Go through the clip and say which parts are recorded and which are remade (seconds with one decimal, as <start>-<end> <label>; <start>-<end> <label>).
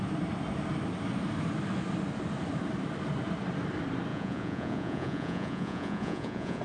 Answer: 0.0-4.1 recorded; 4.1-6.6 remade